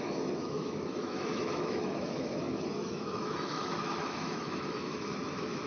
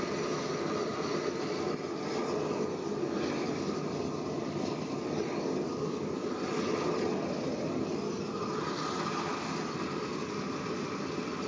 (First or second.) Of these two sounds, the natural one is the second